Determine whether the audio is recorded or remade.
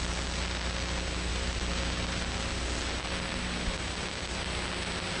recorded